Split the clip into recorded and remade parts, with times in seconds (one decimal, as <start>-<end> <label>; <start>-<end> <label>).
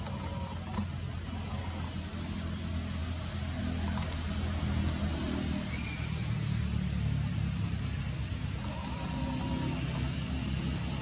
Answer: 0.0-11.0 recorded